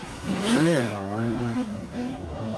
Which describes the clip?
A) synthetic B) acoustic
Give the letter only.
A